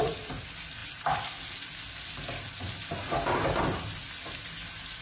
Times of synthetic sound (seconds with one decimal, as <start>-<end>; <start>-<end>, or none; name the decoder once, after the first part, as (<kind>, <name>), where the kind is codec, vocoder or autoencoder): none